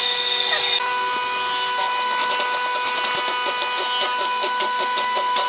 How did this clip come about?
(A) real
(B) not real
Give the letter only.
A